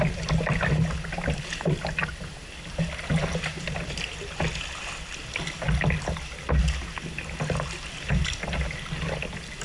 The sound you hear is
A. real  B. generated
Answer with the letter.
A